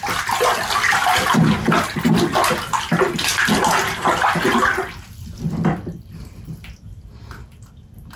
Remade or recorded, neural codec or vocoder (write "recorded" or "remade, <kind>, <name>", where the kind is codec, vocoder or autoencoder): recorded